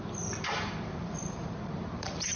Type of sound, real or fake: fake